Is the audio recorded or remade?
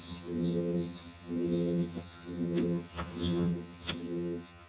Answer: remade